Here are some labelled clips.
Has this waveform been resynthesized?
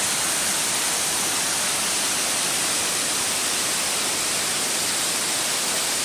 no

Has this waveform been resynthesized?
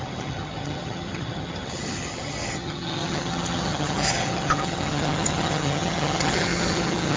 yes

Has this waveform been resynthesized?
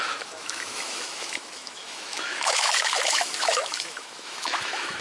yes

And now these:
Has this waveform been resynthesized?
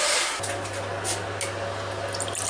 no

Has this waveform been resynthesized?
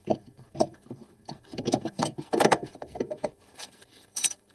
yes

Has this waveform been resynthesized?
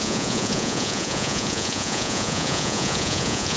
yes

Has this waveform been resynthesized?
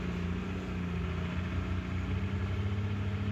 no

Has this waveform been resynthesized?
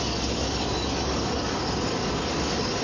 yes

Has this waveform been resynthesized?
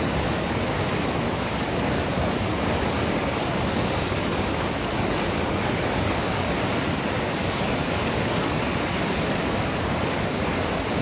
yes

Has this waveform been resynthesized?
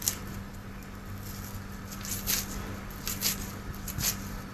no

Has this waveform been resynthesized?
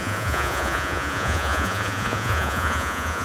yes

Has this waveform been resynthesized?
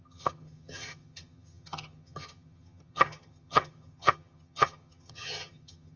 yes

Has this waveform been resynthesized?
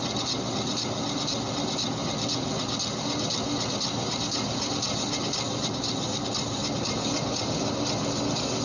no